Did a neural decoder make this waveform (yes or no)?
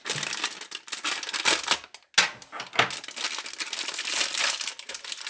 no